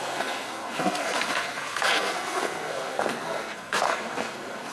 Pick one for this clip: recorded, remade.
remade